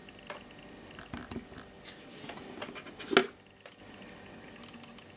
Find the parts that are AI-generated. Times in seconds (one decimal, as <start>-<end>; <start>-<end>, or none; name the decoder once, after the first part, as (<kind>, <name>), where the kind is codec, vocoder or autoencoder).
0.0-1.0 (vocoder, BigVGAN v2)